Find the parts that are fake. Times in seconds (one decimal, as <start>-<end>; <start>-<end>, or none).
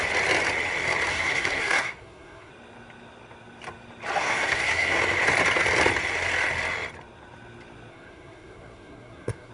1.1-2.5; 4.2-5.0; 7.9-9.5